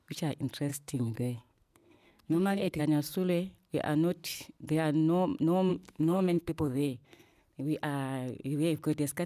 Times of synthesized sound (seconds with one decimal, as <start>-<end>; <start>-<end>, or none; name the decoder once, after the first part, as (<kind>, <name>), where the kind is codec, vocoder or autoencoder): 0.7-2.8 (codec, SNAC); 5.7-7.4